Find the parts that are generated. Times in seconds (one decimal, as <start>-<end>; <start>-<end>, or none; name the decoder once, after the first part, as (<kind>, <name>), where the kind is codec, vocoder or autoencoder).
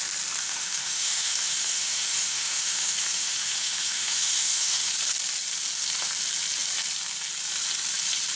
0.4-4.9 (autoencoder, DAC-VAE)